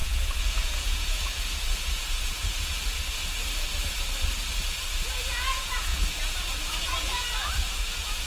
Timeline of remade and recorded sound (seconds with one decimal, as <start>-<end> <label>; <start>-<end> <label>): 0.0-3.2 remade; 3.2-4.4 recorded; 4.4-8.3 remade